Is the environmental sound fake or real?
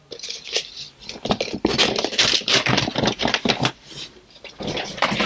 fake